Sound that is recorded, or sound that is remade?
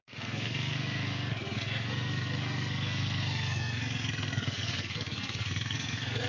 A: remade